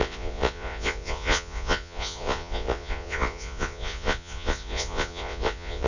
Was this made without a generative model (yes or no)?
no